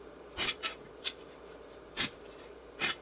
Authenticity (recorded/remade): remade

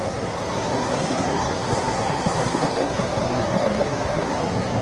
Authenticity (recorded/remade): remade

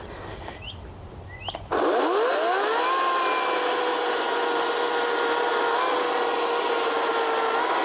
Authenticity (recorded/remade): recorded